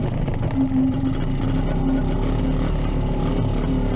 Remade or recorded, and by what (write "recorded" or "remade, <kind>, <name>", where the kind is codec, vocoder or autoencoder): recorded